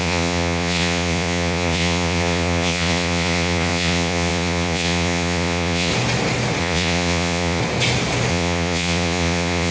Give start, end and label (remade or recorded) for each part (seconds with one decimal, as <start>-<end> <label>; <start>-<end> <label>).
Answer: 0.0-5.9 remade; 5.9-6.6 recorded; 6.6-7.6 remade; 7.6-8.3 recorded; 8.3-9.7 remade